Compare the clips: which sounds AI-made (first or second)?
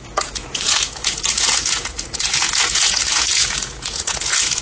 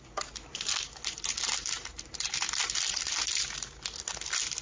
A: first